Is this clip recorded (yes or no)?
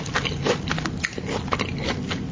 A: yes